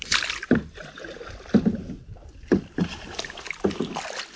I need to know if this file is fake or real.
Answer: real